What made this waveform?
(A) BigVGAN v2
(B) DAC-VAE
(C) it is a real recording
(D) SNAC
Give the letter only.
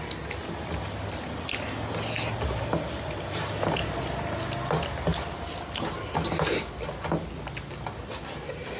C